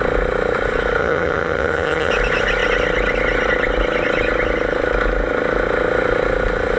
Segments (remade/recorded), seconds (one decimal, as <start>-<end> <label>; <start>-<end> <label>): 0.0-1.0 recorded; 1.0-2.1 remade; 2.1-6.8 recorded